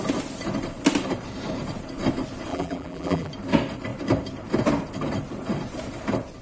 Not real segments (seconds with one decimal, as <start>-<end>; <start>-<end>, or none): 2.5-3.3